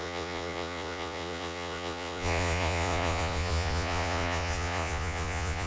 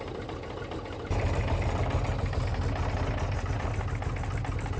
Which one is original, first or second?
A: second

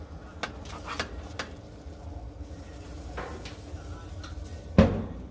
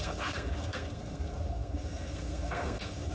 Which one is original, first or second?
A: first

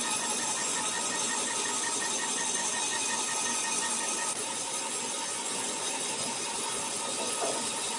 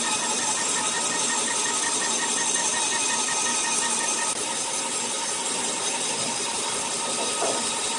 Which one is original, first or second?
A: second